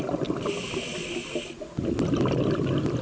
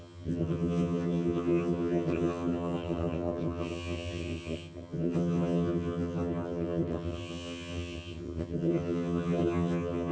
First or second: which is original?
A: first